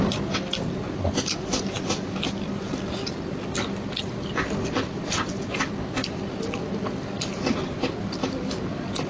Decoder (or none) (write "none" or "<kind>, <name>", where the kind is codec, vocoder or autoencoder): vocoder, BigVGAN v2